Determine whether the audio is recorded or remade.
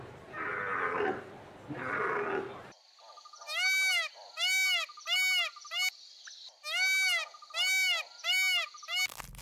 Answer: recorded